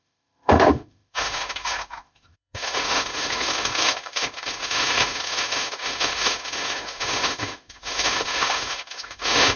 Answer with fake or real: fake